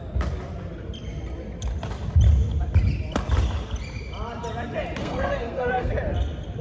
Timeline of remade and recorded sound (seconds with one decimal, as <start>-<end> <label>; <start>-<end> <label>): 0.0-5.0 recorded; 5.0-5.9 remade; 5.9-6.6 recorded